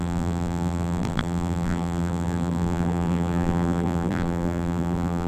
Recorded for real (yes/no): no